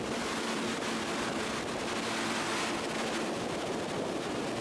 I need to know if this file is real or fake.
real